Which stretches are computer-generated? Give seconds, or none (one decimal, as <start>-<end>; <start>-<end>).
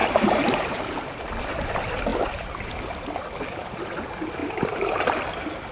0.0-1.1; 2.1-2.7; 4.4-5.2